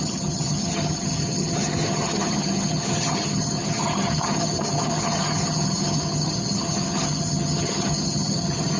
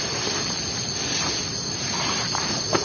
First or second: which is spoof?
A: first